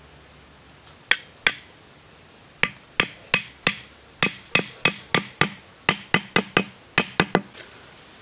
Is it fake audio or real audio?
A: real